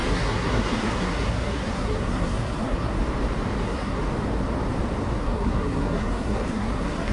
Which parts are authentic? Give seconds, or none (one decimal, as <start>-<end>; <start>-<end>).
3.0-3.6; 4.0-5.2